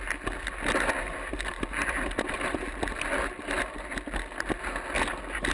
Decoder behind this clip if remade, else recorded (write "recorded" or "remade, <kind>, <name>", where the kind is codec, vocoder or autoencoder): recorded